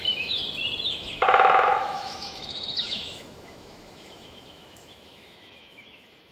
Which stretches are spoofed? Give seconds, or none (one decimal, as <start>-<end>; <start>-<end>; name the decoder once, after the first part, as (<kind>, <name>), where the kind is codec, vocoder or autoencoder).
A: 0.0-0.4 (autoencoder, DAC-VAE); 0.9-6.3